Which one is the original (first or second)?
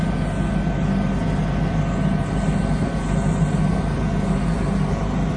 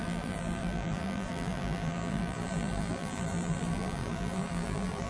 first